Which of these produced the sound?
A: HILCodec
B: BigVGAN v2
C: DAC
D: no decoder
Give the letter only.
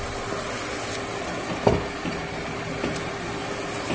D